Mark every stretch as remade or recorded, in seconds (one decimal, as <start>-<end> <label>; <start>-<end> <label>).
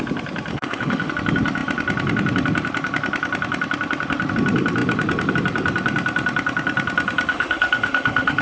0.0-0.5 recorded; 0.5-1.1 remade; 1.1-7.3 recorded; 7.3-8.4 remade